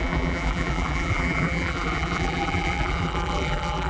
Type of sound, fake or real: fake